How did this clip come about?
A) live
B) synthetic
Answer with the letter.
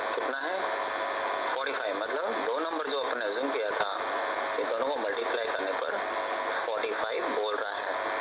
A